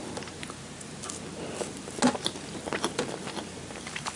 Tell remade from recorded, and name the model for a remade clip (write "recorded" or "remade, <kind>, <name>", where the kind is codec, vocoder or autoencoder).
recorded